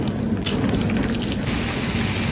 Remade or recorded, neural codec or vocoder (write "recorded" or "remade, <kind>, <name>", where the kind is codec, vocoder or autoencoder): recorded